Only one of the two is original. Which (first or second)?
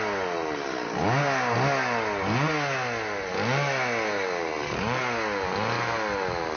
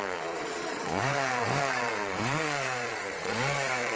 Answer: first